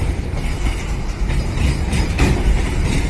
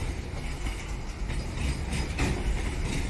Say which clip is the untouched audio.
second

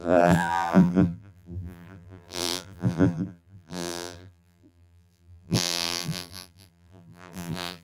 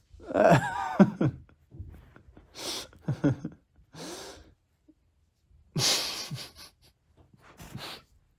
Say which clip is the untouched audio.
second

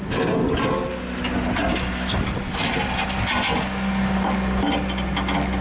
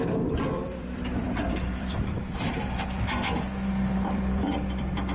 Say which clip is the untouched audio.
first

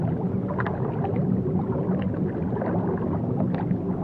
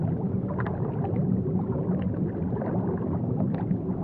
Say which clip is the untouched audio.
first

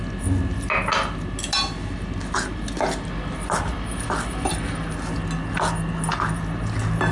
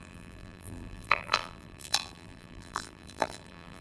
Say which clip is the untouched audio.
first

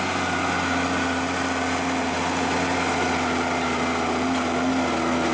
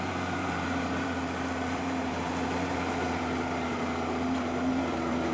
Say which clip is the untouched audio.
first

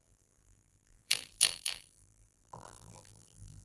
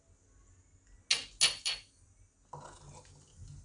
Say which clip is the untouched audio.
second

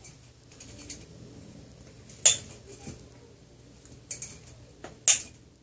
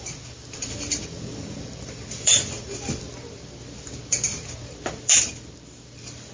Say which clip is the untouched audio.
first